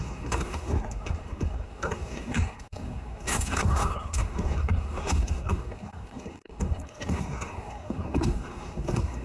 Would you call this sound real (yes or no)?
no